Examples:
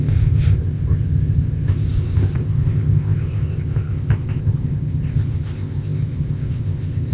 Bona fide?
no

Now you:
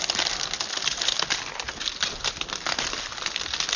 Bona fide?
yes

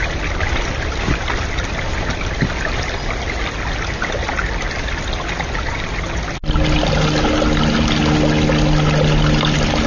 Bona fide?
yes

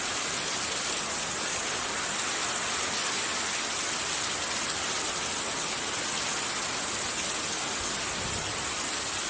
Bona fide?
yes